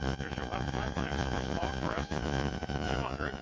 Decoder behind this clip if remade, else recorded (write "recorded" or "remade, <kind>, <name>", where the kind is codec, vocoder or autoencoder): remade, vocoder, Vocos